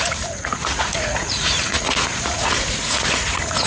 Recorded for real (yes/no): no